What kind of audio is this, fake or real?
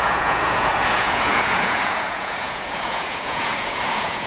fake